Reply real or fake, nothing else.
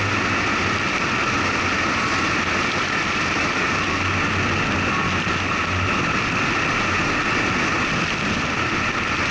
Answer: real